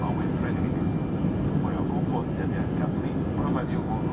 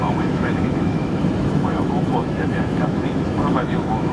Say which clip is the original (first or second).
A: first